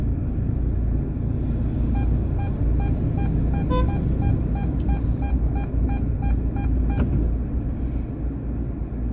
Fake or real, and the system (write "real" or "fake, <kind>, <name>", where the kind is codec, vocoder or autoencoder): real